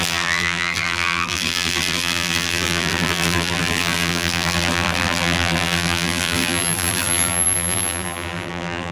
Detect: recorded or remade remade